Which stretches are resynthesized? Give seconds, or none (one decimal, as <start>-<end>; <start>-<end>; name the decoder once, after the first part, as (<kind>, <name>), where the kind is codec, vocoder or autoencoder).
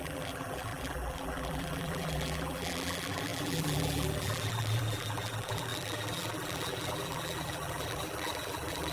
0.0-8.9 (vocoder, BigVGAN v2)